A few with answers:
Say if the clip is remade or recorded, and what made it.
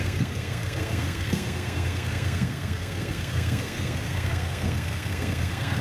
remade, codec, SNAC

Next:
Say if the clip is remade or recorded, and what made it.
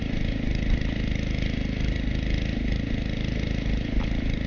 recorded